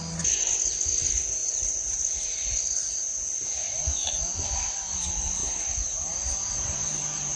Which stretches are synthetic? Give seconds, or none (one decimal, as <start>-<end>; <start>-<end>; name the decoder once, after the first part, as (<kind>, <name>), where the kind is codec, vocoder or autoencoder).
5.4-7.4 (vocoder, BigVGAN v2)